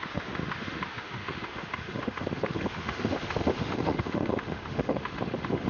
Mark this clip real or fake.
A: fake